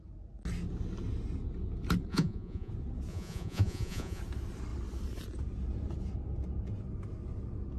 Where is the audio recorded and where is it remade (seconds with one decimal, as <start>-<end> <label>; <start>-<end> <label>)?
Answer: 0.0-2.1 recorded; 2.1-2.7 remade; 2.7-3.1 recorded; 3.1-4.2 remade; 4.2-7.8 recorded